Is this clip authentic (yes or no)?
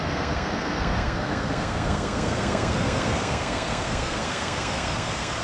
no